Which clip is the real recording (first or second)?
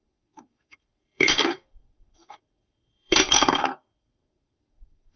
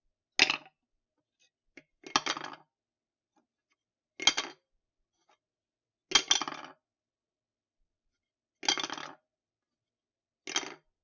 second